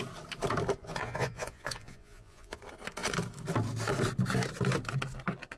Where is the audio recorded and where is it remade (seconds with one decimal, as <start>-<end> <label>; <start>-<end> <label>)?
0.0-0.8 recorded; 0.8-2.6 remade; 2.6-5.6 recorded